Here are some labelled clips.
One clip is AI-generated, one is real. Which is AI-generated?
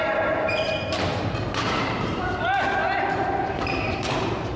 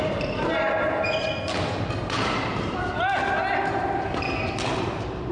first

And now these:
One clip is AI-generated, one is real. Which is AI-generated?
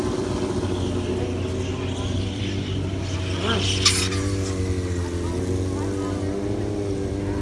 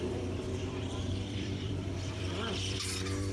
second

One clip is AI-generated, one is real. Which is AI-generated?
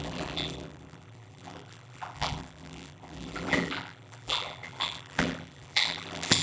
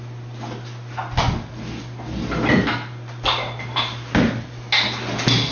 first